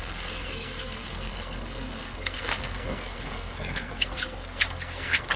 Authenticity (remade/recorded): remade